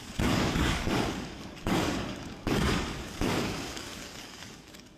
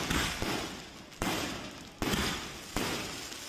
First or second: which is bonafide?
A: second